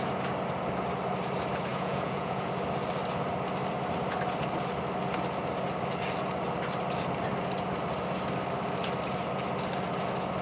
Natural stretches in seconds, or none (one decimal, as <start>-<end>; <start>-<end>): 0.0-1.7; 2.5-10.4